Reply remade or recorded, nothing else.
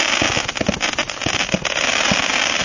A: recorded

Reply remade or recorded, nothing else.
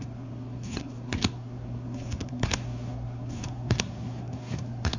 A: remade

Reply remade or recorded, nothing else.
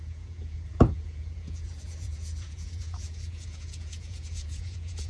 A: remade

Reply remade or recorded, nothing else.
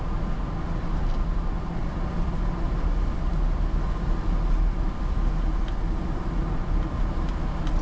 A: recorded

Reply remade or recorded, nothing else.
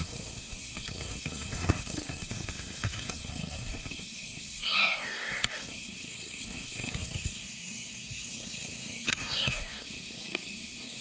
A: remade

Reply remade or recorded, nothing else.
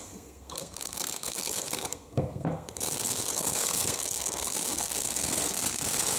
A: remade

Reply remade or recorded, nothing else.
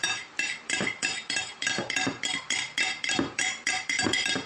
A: remade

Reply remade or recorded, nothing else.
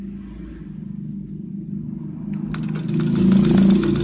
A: recorded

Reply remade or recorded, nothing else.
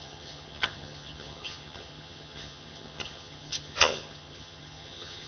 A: remade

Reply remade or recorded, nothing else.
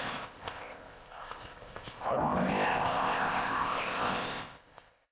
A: remade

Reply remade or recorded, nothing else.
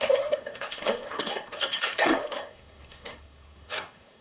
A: remade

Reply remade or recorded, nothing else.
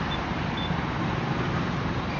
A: remade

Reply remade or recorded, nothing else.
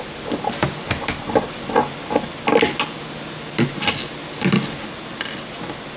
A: recorded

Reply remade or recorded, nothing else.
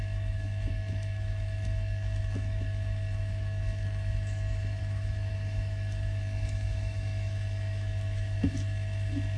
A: remade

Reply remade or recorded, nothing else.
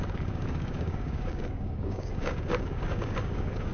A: remade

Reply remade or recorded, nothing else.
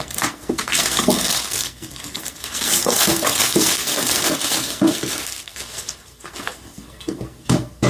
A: remade